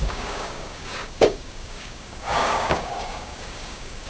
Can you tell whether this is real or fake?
fake